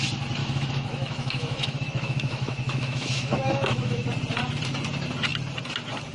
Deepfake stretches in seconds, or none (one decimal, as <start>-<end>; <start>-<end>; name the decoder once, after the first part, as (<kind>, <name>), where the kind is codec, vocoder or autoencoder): 0.4-4.1 (autoencoder, DAC-VAE)